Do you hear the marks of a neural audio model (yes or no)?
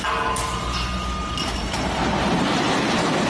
no